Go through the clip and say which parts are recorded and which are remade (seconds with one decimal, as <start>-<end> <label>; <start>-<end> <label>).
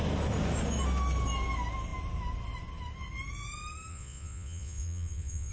0.0-3.9 recorded; 3.9-5.5 remade